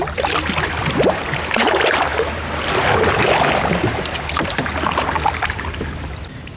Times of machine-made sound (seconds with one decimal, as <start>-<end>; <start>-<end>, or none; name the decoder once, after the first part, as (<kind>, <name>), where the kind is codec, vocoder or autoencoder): none